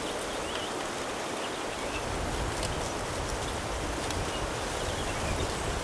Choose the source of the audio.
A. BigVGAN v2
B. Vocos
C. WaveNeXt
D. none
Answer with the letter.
D